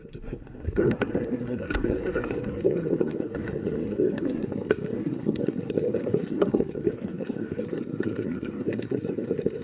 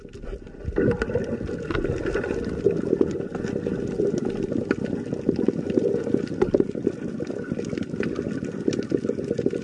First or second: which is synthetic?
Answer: first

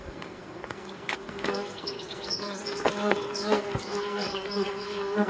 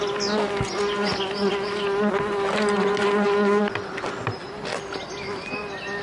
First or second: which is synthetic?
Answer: first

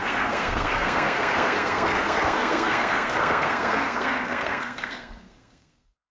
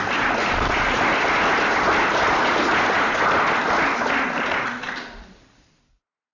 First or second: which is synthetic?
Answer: first